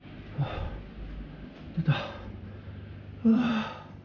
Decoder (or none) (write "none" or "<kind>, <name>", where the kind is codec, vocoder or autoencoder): none